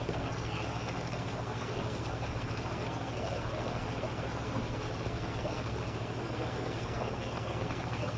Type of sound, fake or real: fake